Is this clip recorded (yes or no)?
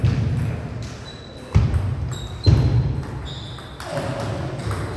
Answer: yes